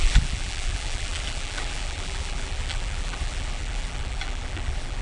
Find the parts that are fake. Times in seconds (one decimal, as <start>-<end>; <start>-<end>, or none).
0.0-5.0